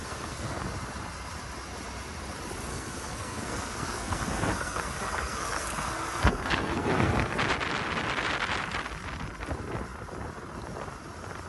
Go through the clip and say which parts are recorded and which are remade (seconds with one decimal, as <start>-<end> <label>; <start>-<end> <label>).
0.0-0.6 remade; 0.6-2.7 recorded; 2.7-7.4 remade; 7.4-11.5 recorded